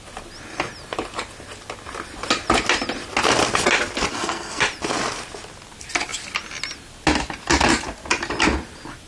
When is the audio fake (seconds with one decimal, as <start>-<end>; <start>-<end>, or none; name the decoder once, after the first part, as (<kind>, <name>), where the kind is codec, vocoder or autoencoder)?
4.1-4.6 (codec, SNAC)